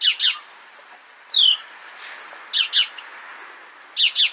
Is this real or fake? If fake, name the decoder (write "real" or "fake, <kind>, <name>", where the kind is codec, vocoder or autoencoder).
real